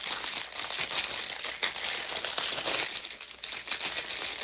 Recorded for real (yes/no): yes